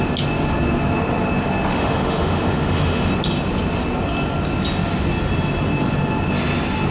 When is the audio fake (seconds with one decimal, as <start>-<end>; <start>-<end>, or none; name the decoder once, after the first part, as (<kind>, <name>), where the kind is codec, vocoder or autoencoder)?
1.7-3.1 (autoencoder, DAC-VAE)